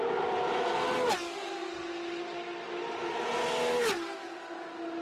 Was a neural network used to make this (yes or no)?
no